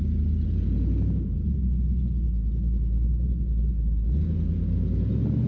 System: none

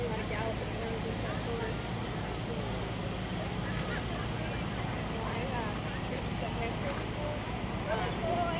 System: none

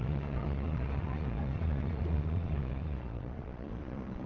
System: vocoder, Vocos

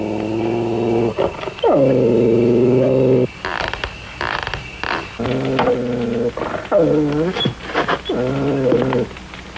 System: none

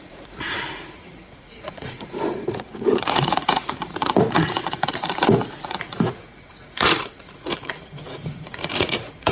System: vocoder, Vocos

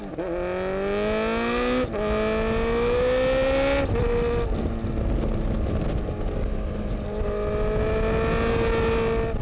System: none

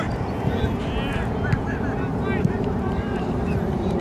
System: none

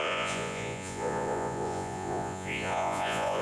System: vocoder, Vocos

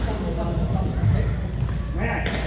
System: none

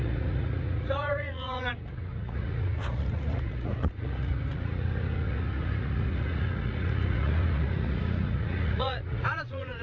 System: vocoder, Vocos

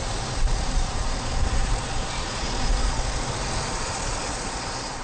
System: vocoder, Vocos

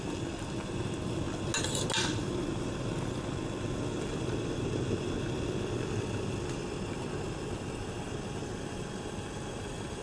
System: none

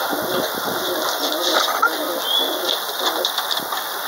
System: none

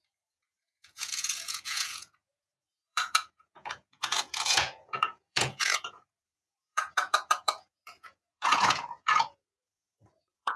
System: vocoder, Vocos